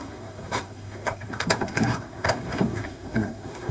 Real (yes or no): no